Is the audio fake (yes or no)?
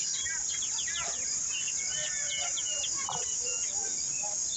no